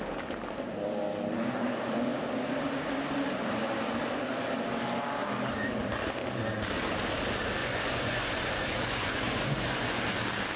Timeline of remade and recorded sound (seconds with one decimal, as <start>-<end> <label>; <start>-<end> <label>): 0.0-7.6 recorded; 7.6-10.0 remade; 10.0-10.6 recorded